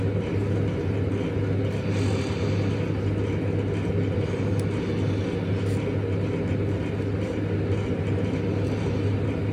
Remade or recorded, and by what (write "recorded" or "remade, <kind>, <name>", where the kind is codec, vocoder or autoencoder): recorded